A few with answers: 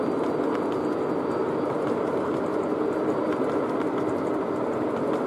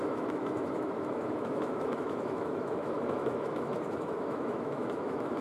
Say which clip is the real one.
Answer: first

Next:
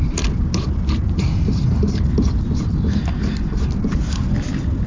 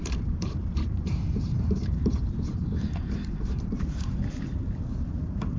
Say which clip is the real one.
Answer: first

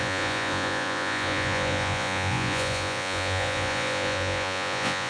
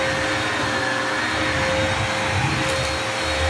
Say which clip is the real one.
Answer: second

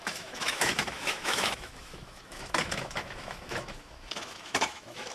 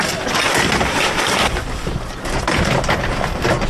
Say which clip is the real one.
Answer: second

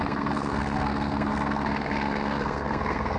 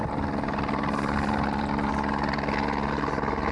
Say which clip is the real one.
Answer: second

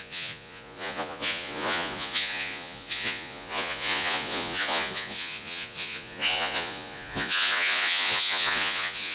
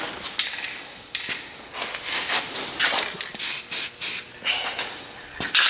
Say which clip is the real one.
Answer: second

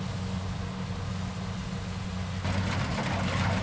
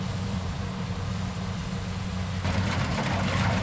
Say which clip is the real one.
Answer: first